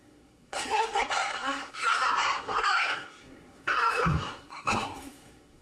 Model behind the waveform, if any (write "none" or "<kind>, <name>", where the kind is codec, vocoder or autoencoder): codec, SNAC